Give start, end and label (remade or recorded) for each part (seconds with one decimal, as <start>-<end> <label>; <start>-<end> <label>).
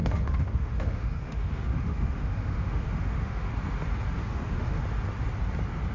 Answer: 0.0-3.5 remade; 3.5-4.2 recorded; 4.2-4.8 remade; 4.8-5.9 recorded